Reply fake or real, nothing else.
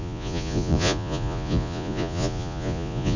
fake